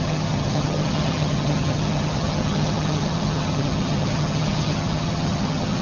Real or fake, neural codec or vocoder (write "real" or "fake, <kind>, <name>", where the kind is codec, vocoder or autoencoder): fake, vocoder, HiFi-GAN